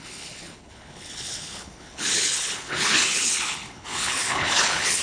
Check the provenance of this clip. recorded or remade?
remade